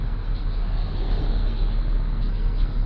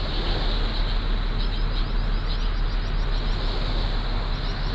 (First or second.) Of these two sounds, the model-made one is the first